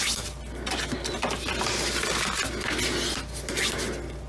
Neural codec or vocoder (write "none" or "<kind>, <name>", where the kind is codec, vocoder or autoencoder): none